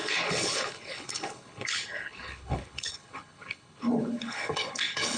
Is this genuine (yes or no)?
no